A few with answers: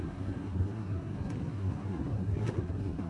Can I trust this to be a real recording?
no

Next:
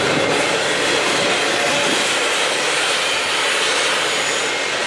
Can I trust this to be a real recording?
yes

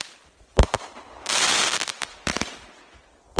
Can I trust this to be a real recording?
yes